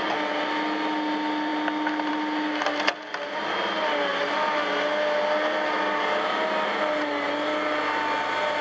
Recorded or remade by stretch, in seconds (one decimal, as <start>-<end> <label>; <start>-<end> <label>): 0.0-8.6 recorded